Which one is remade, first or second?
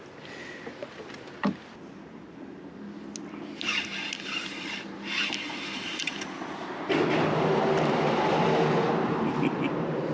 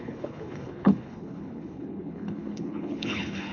second